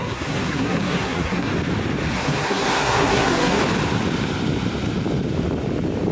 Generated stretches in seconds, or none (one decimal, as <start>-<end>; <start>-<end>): 0.0-1.5; 2.1-3.6